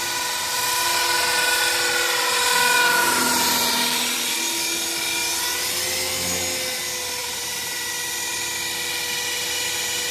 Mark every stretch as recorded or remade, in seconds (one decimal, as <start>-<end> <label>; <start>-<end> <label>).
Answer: 0.0-7.2 recorded; 7.2-7.9 remade; 7.9-10.1 recorded